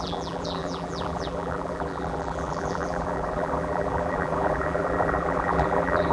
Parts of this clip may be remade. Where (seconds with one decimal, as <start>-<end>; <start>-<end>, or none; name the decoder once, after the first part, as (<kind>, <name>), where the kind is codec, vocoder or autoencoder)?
0.0-6.1 (vocoder, BigVGAN v2)